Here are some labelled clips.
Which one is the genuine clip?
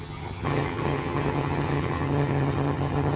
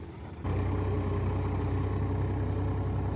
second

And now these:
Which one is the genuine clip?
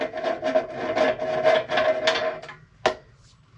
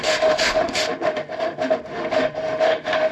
first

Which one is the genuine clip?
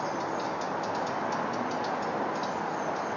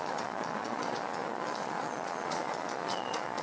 first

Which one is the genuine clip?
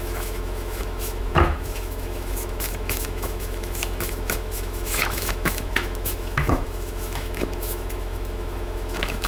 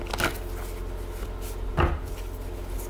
second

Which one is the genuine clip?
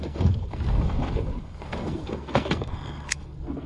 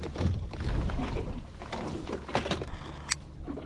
second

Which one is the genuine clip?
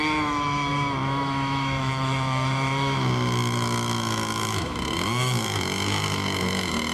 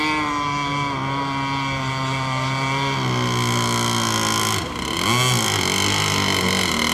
second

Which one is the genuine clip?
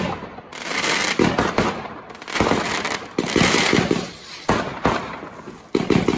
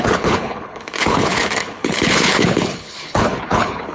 first